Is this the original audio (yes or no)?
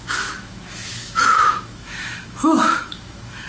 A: no